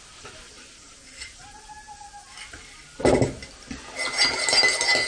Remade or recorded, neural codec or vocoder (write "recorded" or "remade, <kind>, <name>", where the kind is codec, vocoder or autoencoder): recorded